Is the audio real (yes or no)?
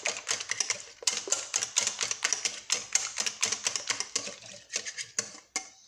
yes